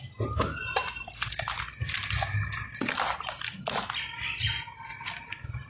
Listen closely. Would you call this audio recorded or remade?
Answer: recorded